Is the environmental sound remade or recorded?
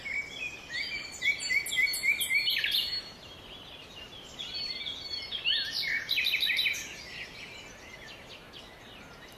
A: recorded